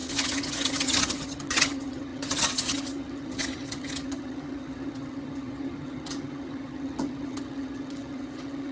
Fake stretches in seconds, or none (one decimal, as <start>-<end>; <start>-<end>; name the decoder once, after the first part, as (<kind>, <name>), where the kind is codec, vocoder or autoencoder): 0.0-8.7 (vocoder, HiFi-GAN)